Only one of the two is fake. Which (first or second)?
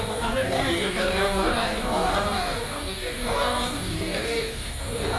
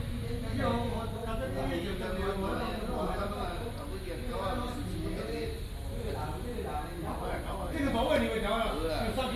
first